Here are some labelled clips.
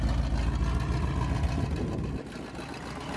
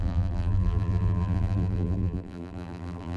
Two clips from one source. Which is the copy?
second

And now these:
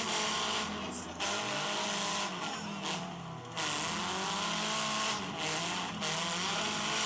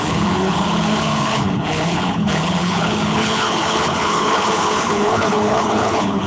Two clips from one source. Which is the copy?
second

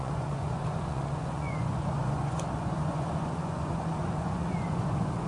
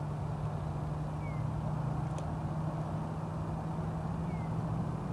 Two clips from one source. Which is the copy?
first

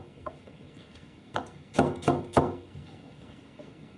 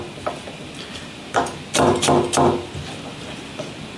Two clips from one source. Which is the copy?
first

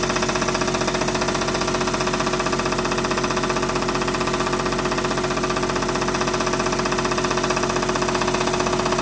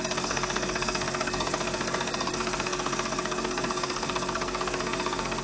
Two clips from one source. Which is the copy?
second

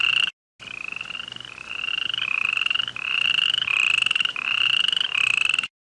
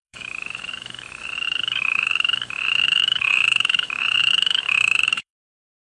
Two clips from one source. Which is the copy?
second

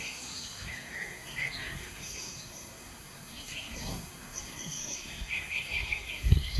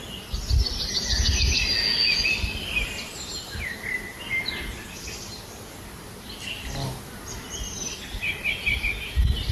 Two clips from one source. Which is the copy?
first